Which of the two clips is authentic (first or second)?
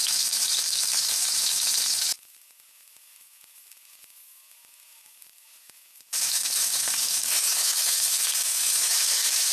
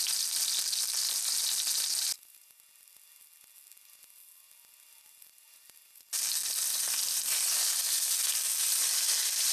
second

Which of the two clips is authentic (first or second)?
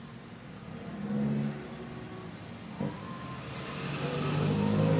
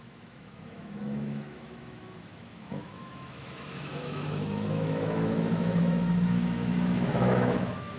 first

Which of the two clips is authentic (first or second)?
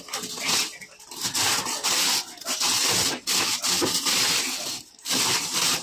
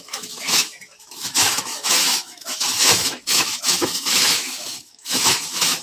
first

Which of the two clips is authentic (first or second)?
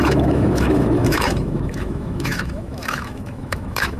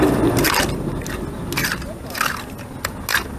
second